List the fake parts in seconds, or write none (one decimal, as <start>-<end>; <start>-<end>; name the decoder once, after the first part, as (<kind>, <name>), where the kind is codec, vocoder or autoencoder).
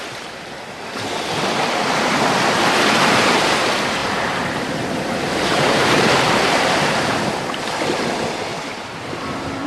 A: 4.0-7.3 (vocoder, BigVGAN v2); 8.5-9.7